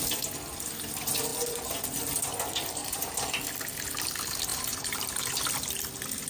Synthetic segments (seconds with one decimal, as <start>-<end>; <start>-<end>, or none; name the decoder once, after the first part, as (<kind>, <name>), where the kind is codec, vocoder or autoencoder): 1.3-1.8 (vocoder, BigVGAN v2); 2.8-3.5; 4.5-5.3